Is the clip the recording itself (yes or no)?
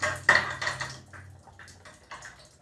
yes